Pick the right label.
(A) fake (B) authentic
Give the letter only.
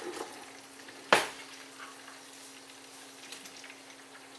B